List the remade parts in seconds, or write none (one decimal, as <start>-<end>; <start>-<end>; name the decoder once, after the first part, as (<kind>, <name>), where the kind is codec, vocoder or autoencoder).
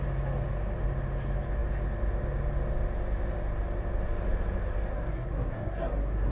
4.9-6.3 (codec, SNAC)